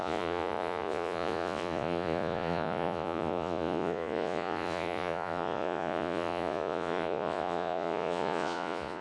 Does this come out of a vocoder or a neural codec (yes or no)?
yes